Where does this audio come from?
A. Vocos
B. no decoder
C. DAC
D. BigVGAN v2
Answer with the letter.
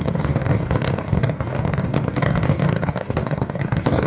C